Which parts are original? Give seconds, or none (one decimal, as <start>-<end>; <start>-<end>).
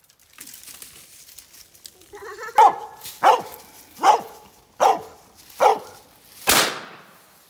0.0-7.5